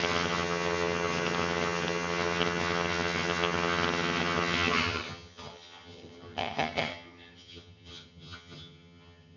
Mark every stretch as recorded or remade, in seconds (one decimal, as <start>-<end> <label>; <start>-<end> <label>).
0.0-9.4 remade